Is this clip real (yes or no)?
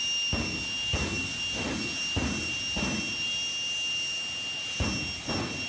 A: yes